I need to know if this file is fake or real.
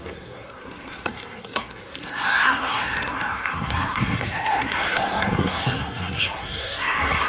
fake